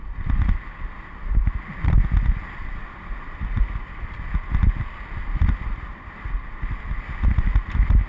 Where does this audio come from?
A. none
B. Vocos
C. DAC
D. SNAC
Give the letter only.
A